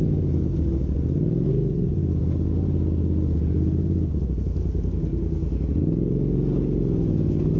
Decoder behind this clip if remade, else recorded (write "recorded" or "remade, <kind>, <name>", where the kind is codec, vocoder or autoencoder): recorded